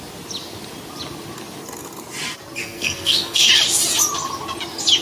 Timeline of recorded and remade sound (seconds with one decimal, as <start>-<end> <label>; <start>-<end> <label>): 0.0-2.6 recorded; 2.6-3.5 remade; 3.5-5.0 recorded